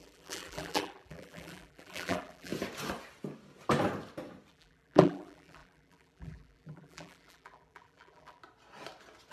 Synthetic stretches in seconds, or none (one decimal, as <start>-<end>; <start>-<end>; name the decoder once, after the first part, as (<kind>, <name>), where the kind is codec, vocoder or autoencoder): 0.0-2.5 (vocoder, BigVGAN v2); 4.5-8.4